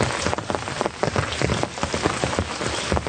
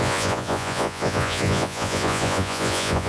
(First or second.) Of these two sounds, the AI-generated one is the second